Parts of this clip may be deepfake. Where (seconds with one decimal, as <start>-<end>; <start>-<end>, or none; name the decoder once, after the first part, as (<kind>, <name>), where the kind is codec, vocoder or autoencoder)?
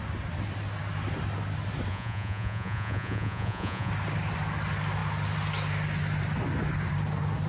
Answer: 1.9-3.9 (vocoder, Vocos)